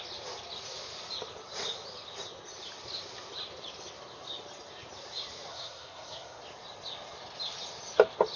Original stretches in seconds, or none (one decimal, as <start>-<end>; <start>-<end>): 0.0-5.5; 6.4-8.4

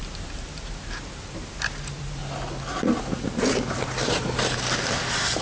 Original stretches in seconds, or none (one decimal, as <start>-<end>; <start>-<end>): 2.2-4.6